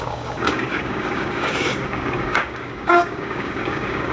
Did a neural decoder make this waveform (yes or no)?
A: yes